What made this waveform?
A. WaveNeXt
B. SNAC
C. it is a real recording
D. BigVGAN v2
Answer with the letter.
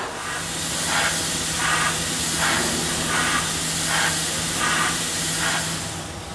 C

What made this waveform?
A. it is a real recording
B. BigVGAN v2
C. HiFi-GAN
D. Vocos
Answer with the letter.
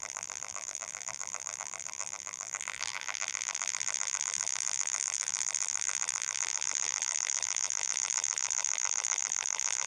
B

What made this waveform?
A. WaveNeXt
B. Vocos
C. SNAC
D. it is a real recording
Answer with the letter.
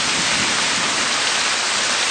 D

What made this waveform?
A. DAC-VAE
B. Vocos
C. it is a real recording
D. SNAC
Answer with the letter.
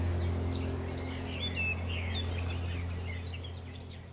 C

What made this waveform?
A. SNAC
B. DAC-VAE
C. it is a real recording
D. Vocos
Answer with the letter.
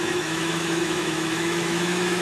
B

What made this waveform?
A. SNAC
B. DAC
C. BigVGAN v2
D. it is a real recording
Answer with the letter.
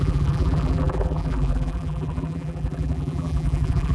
C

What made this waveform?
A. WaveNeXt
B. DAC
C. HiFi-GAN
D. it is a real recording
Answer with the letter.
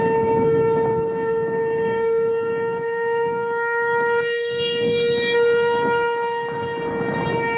B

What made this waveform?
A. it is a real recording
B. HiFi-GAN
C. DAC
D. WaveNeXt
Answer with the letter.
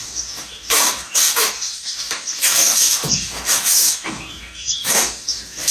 C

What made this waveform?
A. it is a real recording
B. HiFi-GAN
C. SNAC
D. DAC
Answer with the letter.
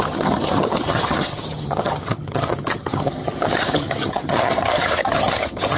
B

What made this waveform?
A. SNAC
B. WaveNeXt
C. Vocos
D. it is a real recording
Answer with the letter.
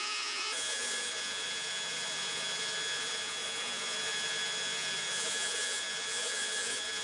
C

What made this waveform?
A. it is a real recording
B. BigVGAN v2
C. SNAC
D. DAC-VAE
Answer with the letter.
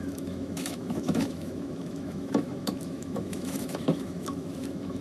D